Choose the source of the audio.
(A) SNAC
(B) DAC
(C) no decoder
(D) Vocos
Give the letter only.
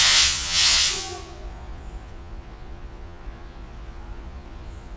D